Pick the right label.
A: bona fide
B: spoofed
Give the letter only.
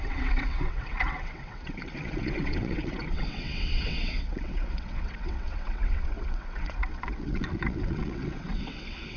B